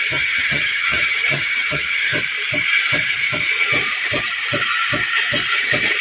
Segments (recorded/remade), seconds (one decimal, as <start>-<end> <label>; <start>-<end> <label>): 0.0-2.1 remade; 2.1-6.0 recorded

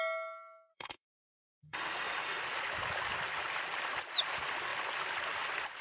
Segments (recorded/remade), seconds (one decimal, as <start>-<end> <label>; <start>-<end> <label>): 0.0-0.7 recorded; 0.7-2.4 remade; 2.4-5.8 recorded

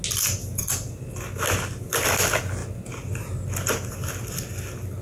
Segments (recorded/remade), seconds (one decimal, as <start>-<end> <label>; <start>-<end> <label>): 0.0-5.0 recorded

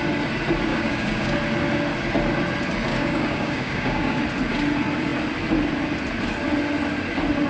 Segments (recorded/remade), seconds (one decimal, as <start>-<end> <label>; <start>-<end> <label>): 0.0-0.7 recorded; 0.7-1.3 remade; 1.3-2.9 recorded; 2.9-4.2 remade; 4.2-7.5 recorded

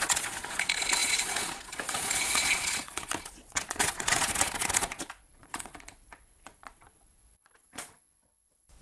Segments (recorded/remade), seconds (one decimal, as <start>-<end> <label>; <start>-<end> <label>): 0.0-8.8 remade